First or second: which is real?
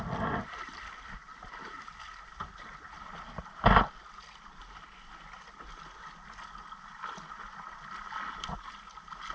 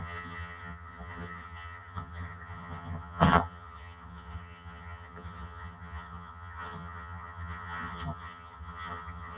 first